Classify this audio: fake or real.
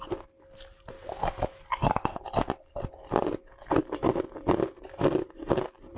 real